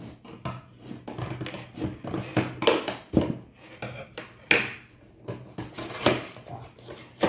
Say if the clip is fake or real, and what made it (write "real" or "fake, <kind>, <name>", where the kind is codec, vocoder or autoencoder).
real